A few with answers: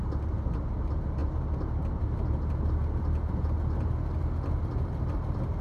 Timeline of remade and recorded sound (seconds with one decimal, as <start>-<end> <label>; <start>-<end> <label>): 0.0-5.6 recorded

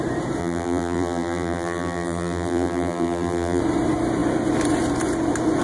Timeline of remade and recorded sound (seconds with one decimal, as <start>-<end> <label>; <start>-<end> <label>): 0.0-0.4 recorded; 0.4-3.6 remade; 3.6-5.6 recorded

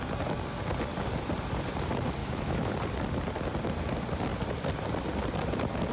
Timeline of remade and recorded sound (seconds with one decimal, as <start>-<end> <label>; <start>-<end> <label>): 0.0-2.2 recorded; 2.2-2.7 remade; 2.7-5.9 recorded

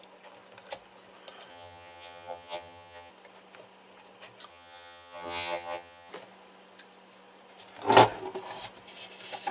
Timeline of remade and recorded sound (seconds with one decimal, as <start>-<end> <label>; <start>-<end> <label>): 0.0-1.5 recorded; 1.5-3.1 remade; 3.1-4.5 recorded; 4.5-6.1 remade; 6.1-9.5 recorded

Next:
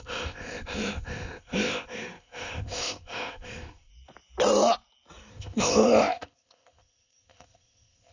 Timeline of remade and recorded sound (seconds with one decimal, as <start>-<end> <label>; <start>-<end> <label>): 0.0-3.9 remade; 3.9-5.3 recorded; 5.3-8.1 remade